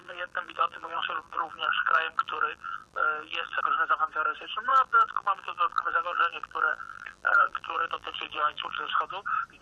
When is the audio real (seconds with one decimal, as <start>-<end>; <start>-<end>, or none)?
3.6-4.7; 8.9-9.6